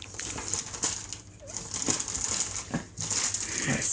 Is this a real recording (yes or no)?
yes